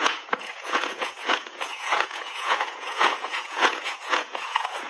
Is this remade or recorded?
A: remade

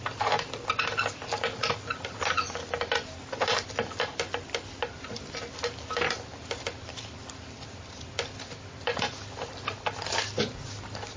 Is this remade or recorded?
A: recorded